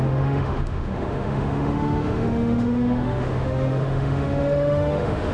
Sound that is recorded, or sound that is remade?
remade